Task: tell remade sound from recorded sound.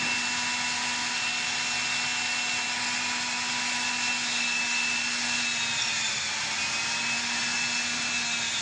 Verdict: recorded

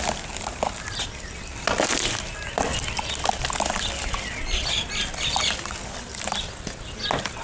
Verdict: recorded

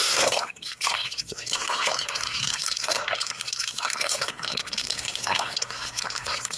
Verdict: remade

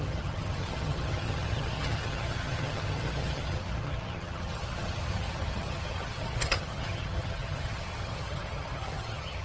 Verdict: remade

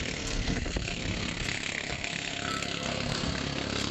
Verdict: remade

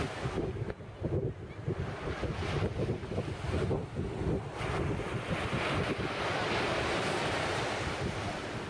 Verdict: recorded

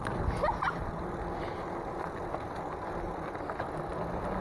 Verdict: recorded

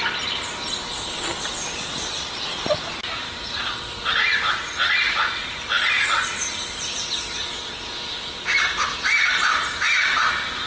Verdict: recorded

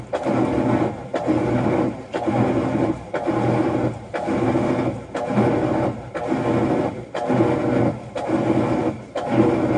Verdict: recorded